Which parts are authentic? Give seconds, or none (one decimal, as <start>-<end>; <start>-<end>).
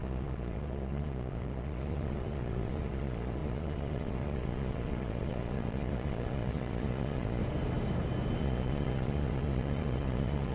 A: 7.4-8.4